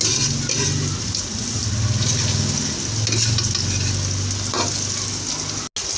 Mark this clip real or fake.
real